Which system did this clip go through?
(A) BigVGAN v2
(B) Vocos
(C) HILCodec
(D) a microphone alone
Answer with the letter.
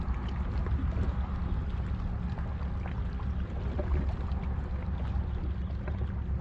D